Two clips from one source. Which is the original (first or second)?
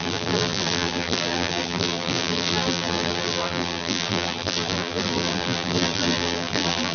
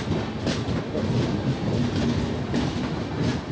second